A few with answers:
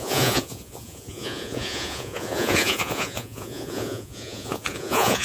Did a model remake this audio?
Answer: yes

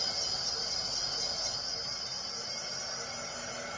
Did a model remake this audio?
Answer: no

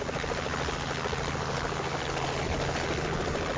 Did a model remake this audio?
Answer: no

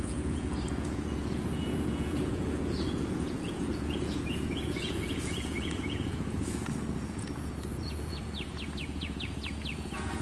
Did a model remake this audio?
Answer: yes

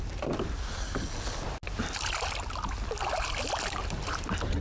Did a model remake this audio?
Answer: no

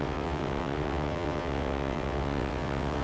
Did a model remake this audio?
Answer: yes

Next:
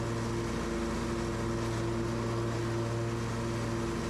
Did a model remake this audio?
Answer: no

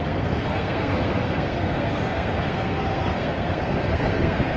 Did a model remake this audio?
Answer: yes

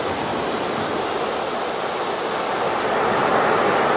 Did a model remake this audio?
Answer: no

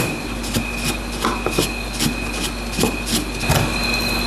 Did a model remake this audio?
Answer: no